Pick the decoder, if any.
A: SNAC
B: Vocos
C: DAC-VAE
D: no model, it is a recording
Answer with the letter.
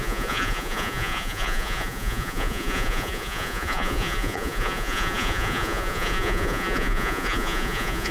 B